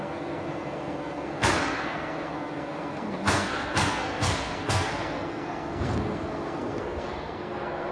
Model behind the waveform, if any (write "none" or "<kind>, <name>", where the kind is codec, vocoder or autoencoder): codec, SNAC